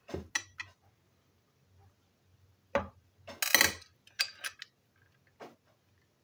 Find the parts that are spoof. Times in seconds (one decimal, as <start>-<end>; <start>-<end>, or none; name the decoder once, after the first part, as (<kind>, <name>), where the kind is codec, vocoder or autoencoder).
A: none